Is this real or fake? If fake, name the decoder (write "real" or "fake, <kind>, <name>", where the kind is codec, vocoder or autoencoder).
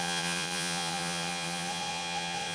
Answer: fake, vocoder, Vocos